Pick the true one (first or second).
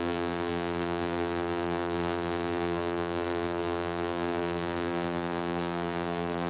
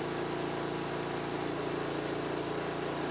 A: second